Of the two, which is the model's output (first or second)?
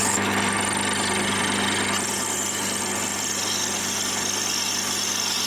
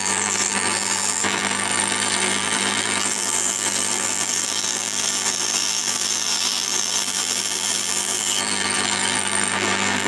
second